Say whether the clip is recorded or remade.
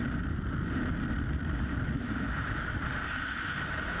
recorded